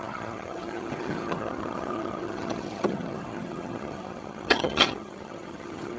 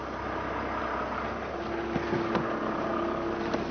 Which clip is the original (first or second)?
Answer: second